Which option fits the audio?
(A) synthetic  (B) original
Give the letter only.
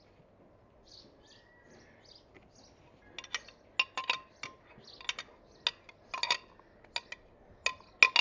B